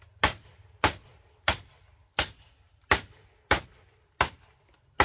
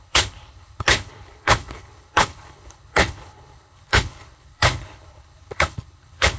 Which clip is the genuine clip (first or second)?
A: first